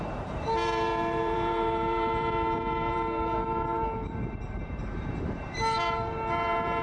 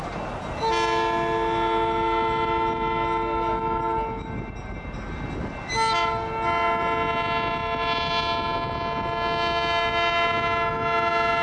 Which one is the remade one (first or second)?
first